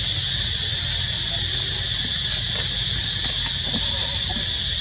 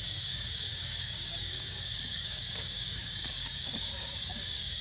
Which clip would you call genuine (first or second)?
first